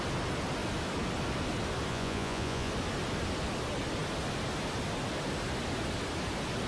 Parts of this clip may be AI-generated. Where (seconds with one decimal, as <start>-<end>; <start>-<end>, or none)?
1.9-2.7